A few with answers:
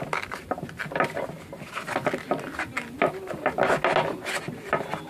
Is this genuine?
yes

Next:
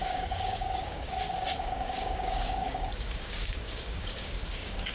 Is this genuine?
no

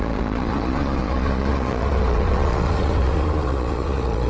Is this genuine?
no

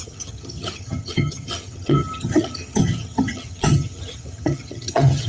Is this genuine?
no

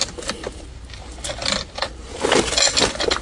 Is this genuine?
yes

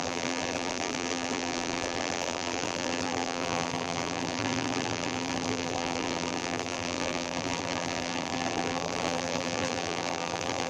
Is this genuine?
no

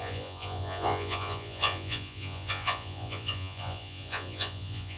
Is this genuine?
no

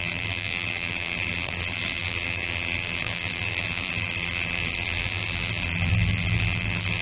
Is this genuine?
no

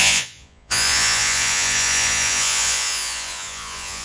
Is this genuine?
no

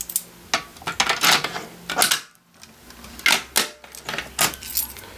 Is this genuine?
yes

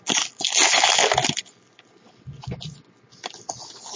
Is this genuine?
yes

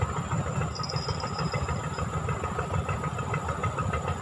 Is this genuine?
yes